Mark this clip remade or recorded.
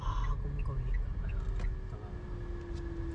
recorded